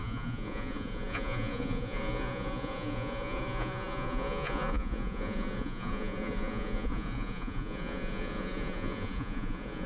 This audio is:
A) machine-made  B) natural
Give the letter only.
A